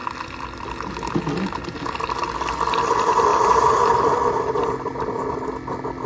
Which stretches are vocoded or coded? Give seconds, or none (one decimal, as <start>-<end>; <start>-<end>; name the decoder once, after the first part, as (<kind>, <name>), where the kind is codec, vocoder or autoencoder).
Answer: 0.0-0.7 (vocoder, BigVGAN v2); 3.3-5.4